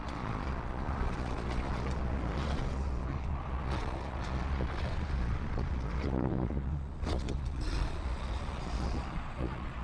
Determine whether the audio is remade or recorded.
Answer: remade